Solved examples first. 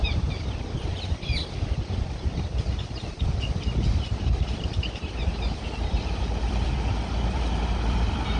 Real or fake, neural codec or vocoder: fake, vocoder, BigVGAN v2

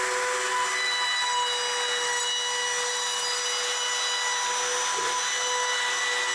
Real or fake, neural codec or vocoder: real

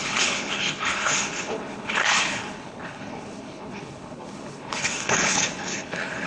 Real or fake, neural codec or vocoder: fake, codec, HILCodec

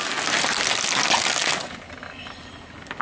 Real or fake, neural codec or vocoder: real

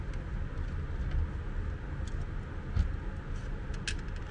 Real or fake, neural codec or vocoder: real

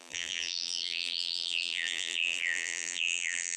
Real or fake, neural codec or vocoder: fake, vocoder, BigVGAN v2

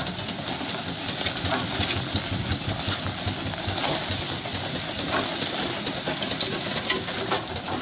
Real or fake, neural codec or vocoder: real